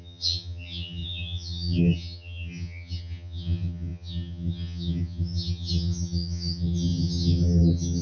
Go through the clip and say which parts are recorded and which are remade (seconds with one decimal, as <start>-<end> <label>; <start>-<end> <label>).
0.0-8.0 remade